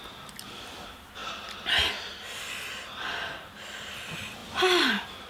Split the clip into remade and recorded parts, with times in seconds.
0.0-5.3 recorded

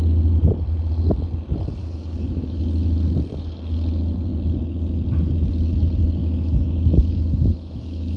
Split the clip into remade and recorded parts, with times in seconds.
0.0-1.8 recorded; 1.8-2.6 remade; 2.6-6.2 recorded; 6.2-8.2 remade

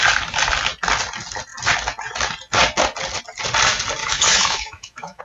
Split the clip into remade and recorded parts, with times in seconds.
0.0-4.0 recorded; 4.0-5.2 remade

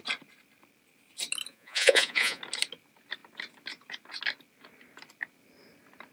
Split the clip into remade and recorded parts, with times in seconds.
0.0-1.5 recorded; 1.5-2.4 remade; 2.4-6.1 recorded